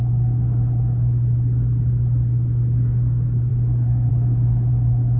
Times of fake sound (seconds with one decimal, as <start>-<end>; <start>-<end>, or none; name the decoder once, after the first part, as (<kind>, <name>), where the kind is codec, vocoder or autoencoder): none